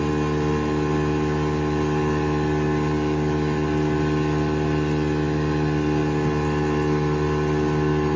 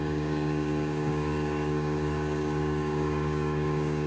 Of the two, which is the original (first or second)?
first